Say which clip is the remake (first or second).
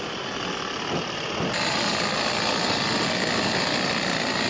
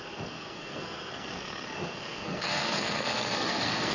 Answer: second